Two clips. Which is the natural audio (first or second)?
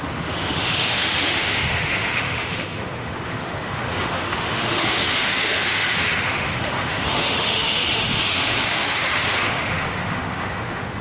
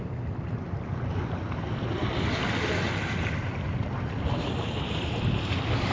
second